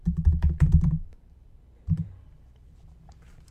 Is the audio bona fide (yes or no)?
no